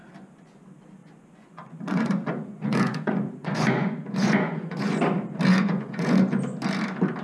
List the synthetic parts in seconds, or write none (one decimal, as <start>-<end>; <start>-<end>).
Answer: 1.0-5.0; 5.5-6.2